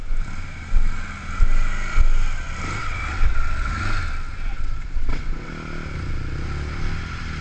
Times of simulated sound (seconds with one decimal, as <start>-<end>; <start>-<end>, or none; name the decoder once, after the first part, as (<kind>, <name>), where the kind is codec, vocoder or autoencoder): 2.8-3.8 (vocoder, WaveNeXt); 4.5-5.5